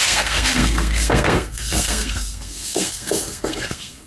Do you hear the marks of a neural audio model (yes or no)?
yes